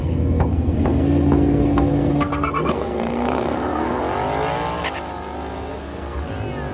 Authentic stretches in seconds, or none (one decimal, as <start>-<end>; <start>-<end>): 4.0-5.7; 6.3-6.7